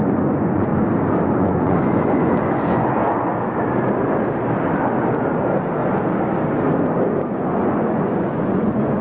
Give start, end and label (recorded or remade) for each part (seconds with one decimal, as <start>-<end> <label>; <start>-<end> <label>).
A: 0.0-0.7 remade; 0.7-1.4 recorded; 1.4-3.0 remade; 3.0-7.3 recorded; 7.3-9.0 remade